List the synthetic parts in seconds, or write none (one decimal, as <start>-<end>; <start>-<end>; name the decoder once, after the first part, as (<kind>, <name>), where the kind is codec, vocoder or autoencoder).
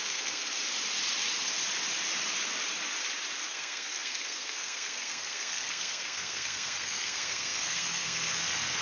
0.0-0.4 (codec, SNAC); 3.5-8.8